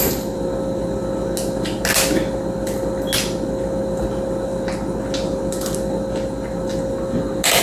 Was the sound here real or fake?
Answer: real